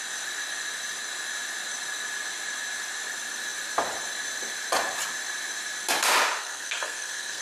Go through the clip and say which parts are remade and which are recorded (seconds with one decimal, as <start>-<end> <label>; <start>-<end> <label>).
0.0-6.4 recorded; 6.4-7.4 remade